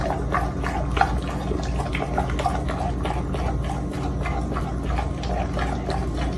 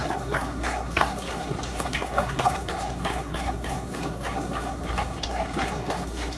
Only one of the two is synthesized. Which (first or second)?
second